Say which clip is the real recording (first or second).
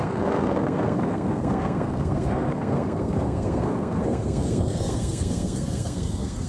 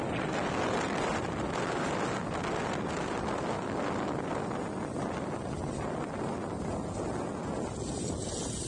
second